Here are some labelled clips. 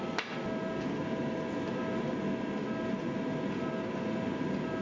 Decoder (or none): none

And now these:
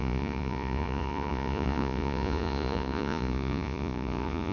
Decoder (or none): vocoder, Vocos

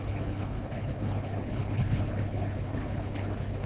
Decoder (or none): codec, HILCodec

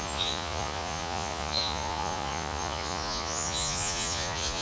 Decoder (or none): vocoder, Vocos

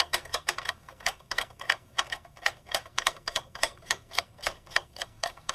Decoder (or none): codec, SNAC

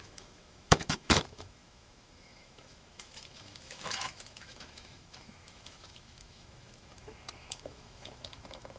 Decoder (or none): autoencoder, DAC-VAE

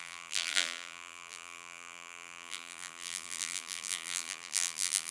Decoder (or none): vocoder, BigVGAN v2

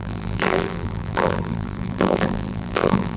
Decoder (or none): vocoder, BigVGAN v2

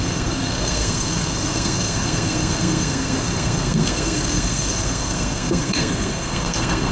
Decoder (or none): codec, SNAC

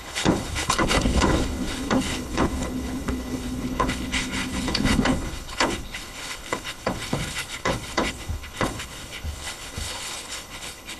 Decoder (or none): codec, HILCodec